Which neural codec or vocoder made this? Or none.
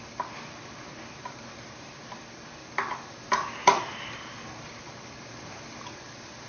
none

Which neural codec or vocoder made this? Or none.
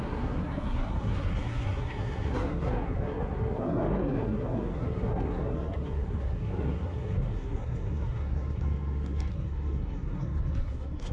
codec, SNAC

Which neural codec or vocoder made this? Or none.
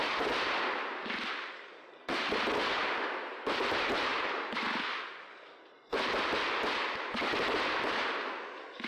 none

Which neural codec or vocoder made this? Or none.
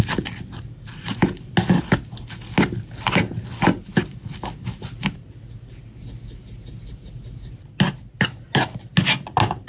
none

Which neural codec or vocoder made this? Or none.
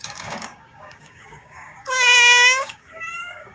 codec, DAC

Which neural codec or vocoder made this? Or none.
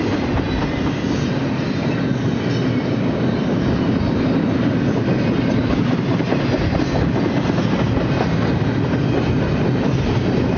none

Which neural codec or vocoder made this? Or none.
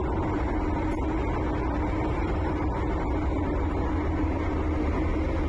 none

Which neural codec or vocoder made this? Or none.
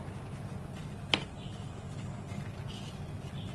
none